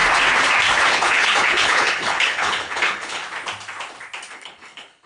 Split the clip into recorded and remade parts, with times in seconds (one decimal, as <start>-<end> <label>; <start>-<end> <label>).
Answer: 0.0-0.9 recorded; 0.9-3.2 remade; 3.2-4.3 recorded; 4.3-5.1 remade